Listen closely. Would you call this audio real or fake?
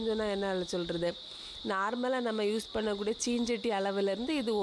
real